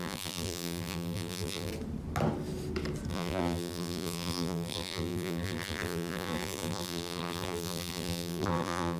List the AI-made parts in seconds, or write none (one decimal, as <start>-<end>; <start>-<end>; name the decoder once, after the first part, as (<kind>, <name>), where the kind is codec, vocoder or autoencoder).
0.0-1.7 (vocoder, BigVGAN v2); 3.1-9.0

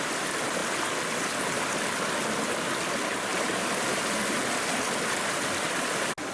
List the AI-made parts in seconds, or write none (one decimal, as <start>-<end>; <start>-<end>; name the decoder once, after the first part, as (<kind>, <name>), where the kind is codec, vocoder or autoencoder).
3.3-4.0 (vocoder, BigVGAN v2)

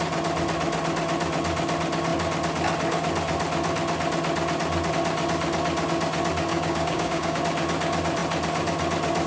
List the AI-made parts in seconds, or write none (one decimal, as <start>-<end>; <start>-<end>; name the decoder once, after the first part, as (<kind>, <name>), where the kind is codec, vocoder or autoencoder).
6.5-7.4 (codec, DAC)

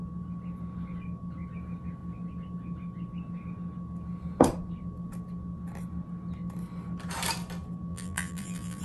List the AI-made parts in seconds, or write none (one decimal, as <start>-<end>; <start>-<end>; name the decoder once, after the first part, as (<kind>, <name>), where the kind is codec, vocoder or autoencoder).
7.9-8.8 (vocoder, BigVGAN v2)